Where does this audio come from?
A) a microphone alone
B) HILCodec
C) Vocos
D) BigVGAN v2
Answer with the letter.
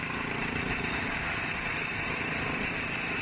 D